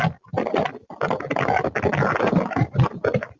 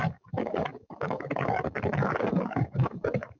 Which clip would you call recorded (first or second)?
first